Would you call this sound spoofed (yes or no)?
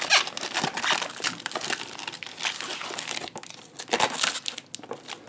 no